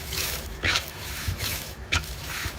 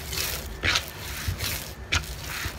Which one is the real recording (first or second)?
second